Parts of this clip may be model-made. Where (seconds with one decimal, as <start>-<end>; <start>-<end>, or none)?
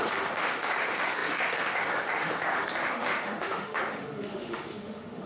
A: 0.0-5.3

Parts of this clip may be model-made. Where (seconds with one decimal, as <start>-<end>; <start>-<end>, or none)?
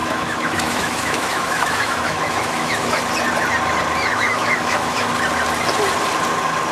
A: 0.0-3.0; 4.1-5.1